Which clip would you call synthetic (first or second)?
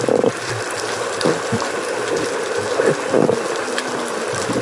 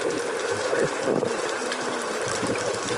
second